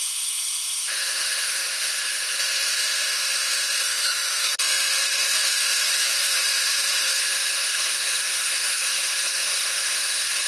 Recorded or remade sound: remade